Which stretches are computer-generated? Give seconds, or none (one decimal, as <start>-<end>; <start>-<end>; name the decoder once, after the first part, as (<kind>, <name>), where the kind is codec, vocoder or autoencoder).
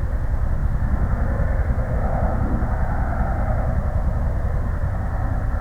0.6-1.9 (vocoder, BigVGAN v2); 4.8-5.6